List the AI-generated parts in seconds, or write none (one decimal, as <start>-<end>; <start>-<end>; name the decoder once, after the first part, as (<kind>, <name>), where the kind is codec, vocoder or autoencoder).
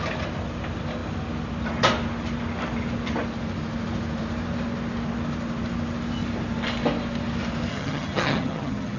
7.7-9.0 (vocoder, HiFi-GAN)